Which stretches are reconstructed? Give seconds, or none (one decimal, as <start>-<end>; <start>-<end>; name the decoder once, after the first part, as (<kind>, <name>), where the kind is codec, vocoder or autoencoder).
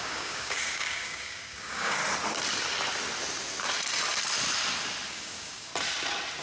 0.0-2.0 (codec, DAC); 5.1-5.7